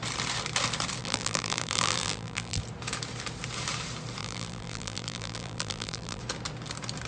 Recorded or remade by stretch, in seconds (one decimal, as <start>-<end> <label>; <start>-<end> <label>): 0.0-1.0 recorded; 1.0-2.6 remade; 2.6-4.2 recorded; 4.2-6.2 remade; 6.2-7.1 recorded